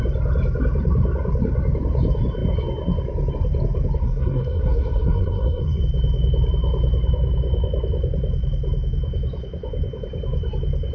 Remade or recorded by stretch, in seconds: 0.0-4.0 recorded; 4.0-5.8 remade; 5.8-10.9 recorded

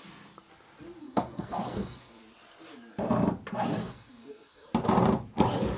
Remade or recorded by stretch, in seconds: 0.0-1.0 recorded; 1.0-2.2 remade; 2.2-3.8 recorded; 3.8-4.7 remade; 4.7-5.8 recorded

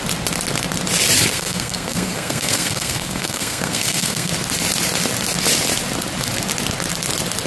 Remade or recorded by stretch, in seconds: 0.0-1.3 recorded; 1.3-4.3 remade; 4.3-7.5 recorded

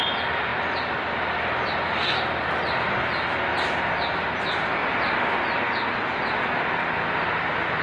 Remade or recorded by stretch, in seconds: 0.0-7.8 recorded

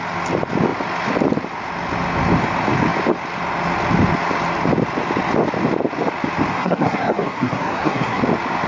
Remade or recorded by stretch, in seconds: 0.0-6.5 recorded; 6.5-8.2 remade; 8.2-8.7 recorded

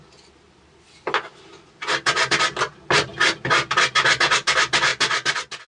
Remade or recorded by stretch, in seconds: 0.0-5.7 recorded